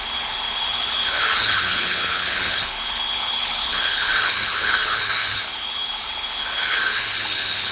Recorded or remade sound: remade